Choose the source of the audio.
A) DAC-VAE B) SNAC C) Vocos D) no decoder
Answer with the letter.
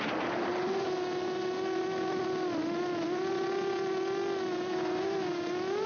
D